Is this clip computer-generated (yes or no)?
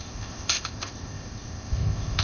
yes